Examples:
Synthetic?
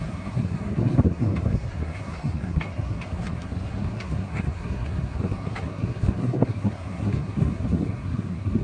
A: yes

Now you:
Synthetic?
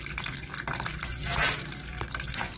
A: no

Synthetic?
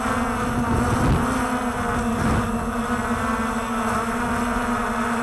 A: no